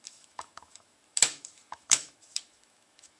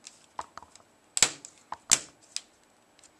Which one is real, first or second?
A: second